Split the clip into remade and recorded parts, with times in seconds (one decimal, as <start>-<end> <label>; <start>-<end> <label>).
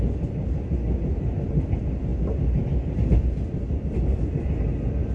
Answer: 0.0-5.1 recorded